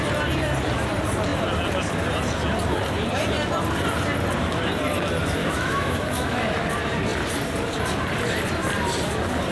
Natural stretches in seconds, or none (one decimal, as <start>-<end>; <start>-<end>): 0.0-5.4; 6.4-9.5